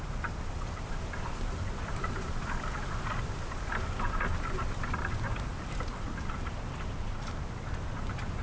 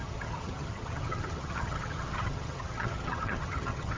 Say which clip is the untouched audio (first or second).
first